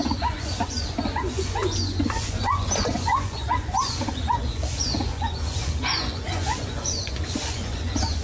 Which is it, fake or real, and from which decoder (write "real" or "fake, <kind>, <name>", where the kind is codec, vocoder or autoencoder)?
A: fake, vocoder, Vocos